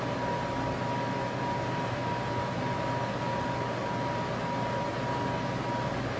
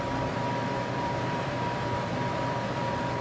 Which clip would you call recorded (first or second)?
first